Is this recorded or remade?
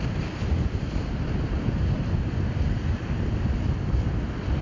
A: recorded